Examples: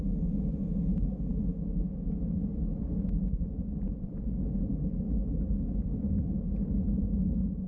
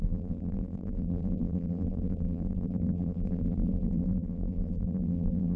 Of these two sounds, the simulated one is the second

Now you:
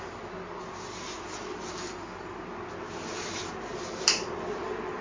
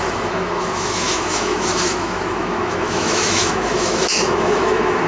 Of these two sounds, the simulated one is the second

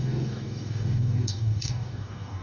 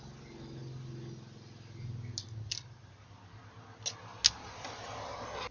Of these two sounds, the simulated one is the first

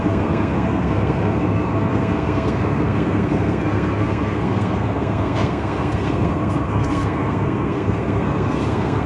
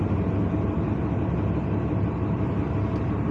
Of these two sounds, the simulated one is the first